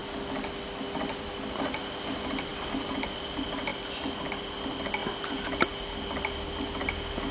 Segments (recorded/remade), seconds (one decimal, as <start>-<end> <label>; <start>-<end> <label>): 0.0-7.3 recorded

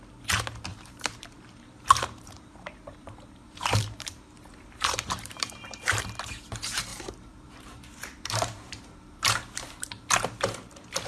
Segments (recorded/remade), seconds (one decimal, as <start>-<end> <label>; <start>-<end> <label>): 0.0-0.7 recorded; 0.7-5.8 remade; 5.8-6.9 recorded; 6.9-10.1 remade; 10.1-11.1 recorded

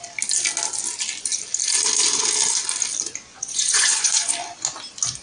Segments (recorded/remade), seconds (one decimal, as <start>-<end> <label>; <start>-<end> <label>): 0.0-3.3 recorded; 3.3-4.3 remade; 4.3-5.2 recorded

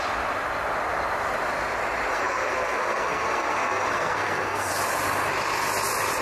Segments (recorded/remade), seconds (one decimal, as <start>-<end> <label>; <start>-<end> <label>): 0.0-2.1 recorded; 2.1-4.7 remade; 4.7-6.2 recorded